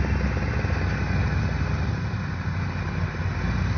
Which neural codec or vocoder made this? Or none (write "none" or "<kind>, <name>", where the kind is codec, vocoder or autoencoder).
none